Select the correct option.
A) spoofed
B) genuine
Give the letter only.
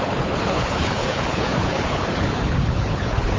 A